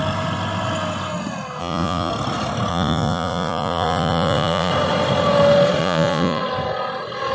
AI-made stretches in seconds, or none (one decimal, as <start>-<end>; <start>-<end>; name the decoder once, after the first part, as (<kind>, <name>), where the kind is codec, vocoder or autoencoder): 1.6-2.1 (vocoder, Vocos); 2.7-4.7; 5.8-6.4